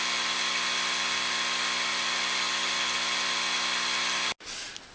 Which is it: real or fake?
real